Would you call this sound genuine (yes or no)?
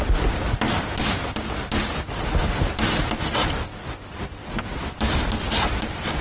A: yes